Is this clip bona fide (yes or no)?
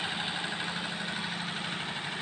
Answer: yes